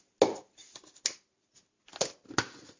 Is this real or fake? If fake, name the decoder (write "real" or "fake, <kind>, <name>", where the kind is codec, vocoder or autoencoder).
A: real